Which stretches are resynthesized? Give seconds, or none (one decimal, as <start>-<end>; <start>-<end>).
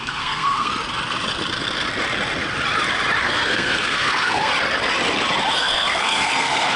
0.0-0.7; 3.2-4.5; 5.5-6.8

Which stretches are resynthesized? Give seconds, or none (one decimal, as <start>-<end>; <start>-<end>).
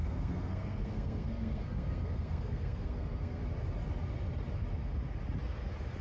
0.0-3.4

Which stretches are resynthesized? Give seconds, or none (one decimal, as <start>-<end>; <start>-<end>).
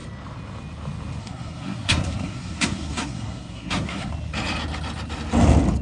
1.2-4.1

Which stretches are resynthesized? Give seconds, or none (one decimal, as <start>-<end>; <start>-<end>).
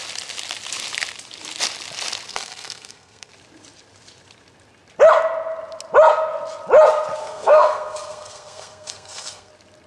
2.3-3.3; 7.2-9.5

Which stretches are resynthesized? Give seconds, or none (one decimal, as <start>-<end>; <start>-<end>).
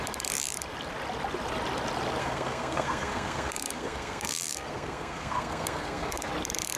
2.2-6.3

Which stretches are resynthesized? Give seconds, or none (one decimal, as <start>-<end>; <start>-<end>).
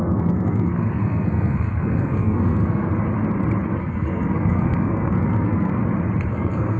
0.0-2.9; 3.8-5.8; 6.3-6.8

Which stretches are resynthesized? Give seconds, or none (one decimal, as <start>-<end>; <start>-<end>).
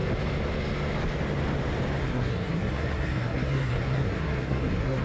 2.0-5.0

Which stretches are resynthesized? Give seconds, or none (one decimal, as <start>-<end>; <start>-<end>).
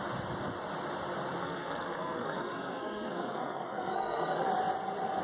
1.4-4.5